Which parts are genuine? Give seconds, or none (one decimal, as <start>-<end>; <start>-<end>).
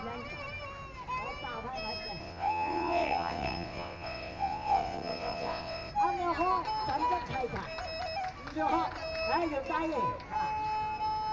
0.0-2.2; 5.9-11.3